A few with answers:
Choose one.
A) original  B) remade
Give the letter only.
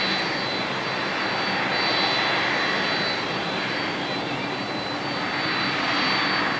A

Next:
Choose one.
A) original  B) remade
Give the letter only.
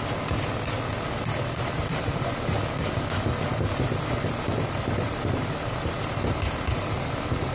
A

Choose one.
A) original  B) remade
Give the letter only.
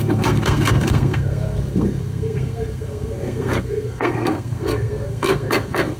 B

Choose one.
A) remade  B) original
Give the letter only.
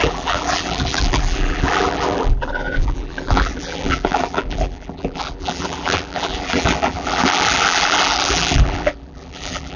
A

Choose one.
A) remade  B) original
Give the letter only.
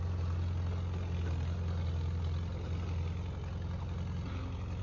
B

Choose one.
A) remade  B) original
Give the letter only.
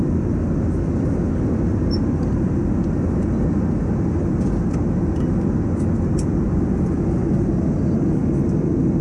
B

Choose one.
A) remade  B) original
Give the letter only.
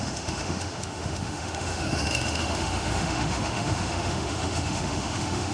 A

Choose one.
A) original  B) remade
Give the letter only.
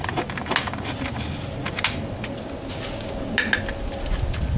A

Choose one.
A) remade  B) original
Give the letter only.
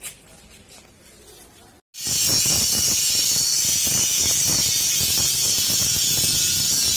B